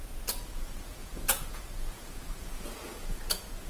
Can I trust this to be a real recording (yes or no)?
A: no